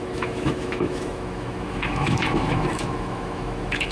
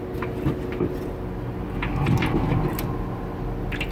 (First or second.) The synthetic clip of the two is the first